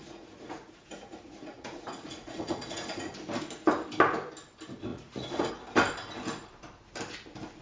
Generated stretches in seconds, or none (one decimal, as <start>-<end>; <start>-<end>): 0.0-3.1; 4.9-5.5